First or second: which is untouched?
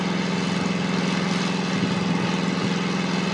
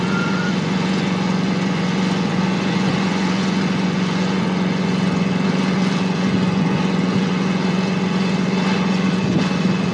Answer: first